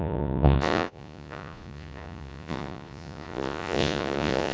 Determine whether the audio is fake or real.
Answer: fake